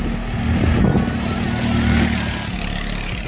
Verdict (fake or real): real